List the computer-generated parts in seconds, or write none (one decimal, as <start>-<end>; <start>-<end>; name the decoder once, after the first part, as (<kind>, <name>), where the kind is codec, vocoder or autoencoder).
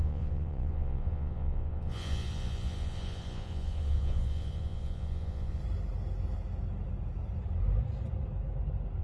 0.0-5.6 (vocoder, Vocos)